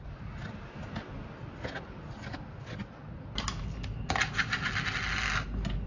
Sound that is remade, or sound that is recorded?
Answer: recorded